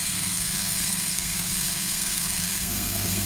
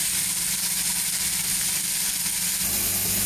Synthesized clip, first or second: first